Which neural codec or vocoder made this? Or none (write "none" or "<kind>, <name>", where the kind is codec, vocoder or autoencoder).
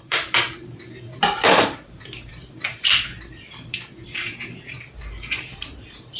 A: vocoder, BigVGAN v2